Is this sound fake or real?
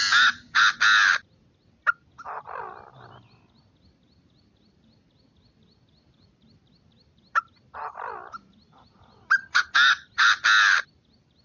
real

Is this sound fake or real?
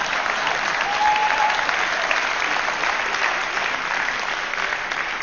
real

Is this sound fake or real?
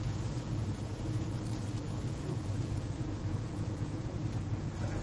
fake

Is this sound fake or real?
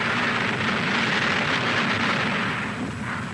real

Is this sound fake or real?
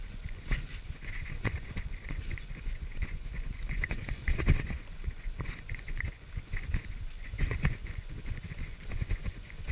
fake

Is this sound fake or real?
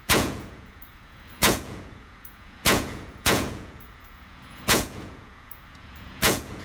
fake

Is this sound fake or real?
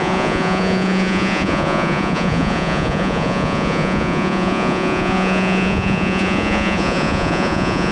fake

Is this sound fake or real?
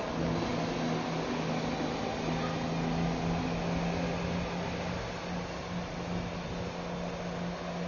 real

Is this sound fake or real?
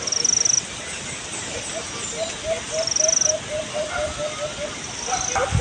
real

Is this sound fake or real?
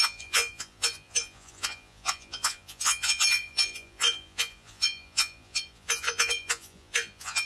fake